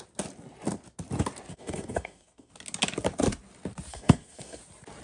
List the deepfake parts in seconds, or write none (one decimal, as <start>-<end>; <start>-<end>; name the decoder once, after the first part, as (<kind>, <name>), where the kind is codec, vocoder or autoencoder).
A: 1.5-2.5 (codec, SNAC); 3.9-4.6